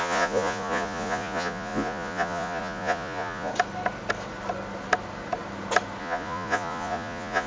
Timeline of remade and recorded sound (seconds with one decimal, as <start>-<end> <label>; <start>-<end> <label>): 0.0-3.5 remade; 3.5-6.0 recorded; 6.0-7.5 remade